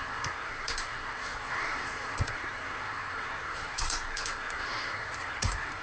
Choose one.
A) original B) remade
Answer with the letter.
B